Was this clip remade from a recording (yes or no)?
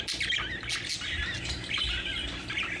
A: no